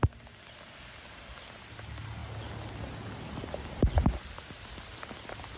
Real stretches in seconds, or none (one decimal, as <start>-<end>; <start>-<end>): 0.0-5.6